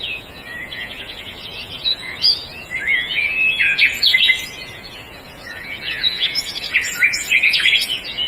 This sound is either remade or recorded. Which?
remade